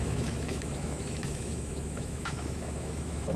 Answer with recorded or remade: remade